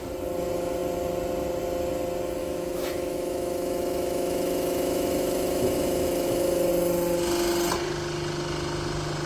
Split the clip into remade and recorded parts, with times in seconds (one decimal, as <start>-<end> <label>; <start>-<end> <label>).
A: 0.0-2.4 recorded; 2.4-6.7 remade; 6.7-9.3 recorded